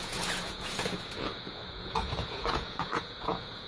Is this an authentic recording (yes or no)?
no